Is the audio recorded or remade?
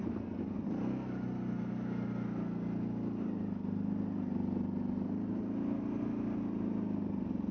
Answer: recorded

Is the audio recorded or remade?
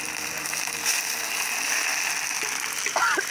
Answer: recorded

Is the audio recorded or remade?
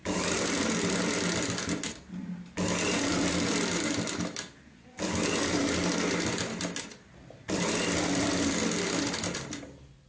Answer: recorded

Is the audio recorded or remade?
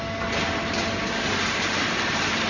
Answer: recorded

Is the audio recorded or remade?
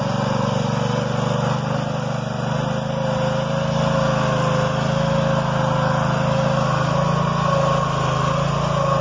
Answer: recorded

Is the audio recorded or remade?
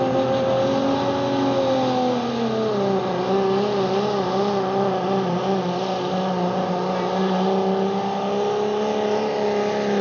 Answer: recorded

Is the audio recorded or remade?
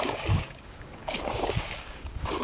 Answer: remade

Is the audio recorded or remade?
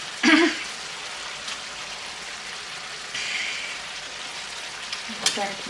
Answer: remade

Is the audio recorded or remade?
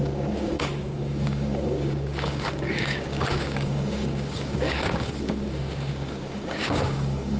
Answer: remade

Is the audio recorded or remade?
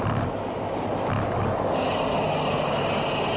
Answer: recorded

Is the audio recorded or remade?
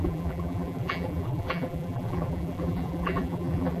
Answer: remade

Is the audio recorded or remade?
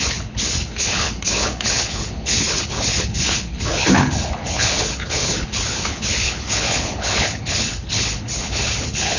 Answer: remade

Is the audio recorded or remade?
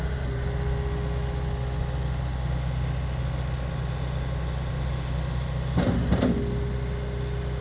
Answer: recorded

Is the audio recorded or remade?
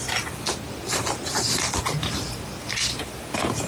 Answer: recorded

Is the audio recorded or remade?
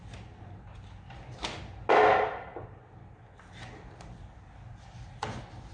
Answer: recorded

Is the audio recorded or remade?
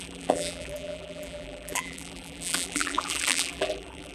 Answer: remade